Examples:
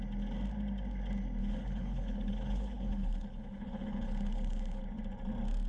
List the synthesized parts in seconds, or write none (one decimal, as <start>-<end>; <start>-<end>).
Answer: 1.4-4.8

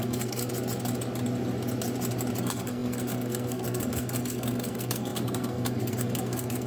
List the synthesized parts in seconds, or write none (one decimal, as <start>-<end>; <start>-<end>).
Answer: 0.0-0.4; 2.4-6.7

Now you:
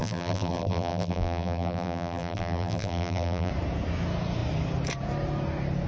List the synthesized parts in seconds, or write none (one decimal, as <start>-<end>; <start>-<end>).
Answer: 0.0-3.5

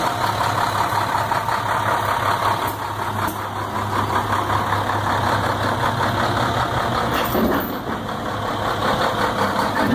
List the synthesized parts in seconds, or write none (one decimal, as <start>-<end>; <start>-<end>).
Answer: none

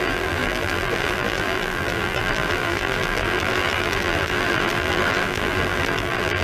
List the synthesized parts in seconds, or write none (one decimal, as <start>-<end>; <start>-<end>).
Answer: 0.0-6.4

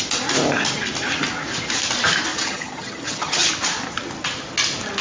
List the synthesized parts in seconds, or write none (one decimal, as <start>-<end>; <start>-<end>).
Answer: 2.3-3.5

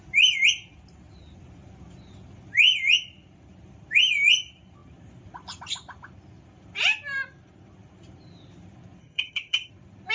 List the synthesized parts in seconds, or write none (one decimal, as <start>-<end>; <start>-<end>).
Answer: 9.0-9.7

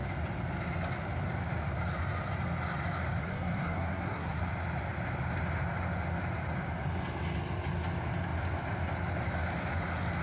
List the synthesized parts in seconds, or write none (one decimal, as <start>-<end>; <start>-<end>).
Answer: 3.2-4.4